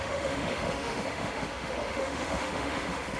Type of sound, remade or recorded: remade